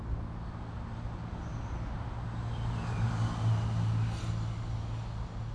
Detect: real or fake real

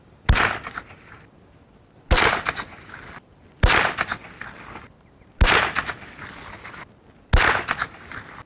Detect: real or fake real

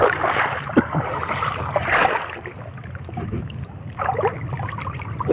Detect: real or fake real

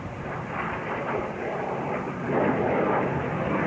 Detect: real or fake real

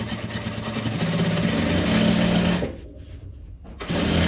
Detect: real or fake real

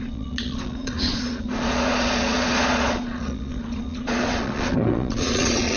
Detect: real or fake fake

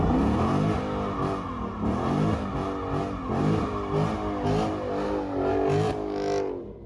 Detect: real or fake real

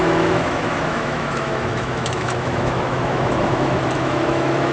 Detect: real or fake fake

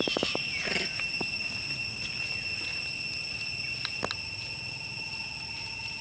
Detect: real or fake real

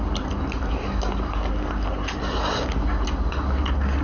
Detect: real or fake real